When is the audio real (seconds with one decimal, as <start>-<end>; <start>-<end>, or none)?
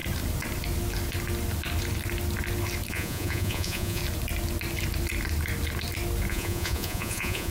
0.0-2.9; 4.0-6.3